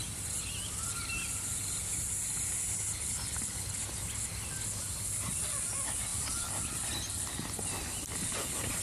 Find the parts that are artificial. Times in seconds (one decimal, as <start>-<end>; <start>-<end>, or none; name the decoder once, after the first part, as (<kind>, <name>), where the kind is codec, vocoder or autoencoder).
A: none